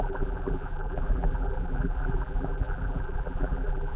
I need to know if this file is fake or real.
fake